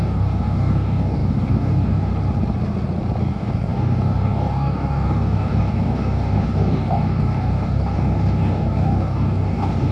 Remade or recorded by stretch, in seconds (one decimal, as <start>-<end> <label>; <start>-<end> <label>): 0.0-2.1 remade; 2.1-3.2 recorded; 3.2-9.9 remade